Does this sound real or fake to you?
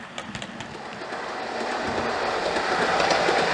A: real